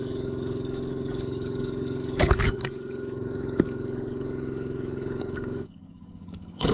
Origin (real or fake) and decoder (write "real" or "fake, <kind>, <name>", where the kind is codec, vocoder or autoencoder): fake, codec, DAC